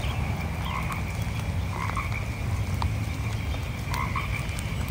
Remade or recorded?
recorded